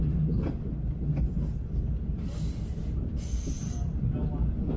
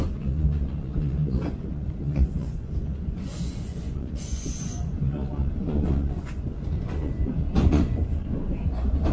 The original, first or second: first